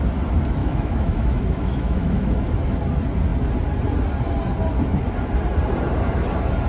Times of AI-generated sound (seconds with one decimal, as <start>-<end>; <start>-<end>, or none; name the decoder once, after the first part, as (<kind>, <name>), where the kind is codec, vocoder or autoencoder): 0.6-2.5 (autoencoder, DAC-VAE)